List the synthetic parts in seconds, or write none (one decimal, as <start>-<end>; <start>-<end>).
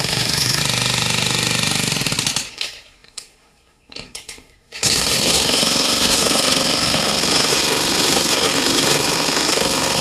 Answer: 0.0-0.6; 2.5-10.0